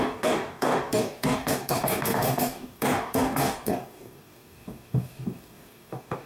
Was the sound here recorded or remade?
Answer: remade